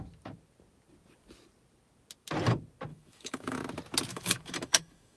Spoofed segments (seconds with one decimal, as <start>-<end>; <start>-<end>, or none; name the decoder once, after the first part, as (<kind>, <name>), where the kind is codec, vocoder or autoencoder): 2.9-3.6 (autoencoder, DAC-VAE); 4.1-5.2